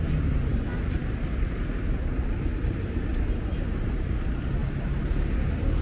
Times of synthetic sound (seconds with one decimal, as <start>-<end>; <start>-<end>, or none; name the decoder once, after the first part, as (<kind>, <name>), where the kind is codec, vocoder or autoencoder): none